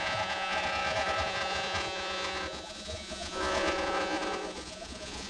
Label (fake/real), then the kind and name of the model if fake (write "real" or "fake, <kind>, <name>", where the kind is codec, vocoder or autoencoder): fake, vocoder, Vocos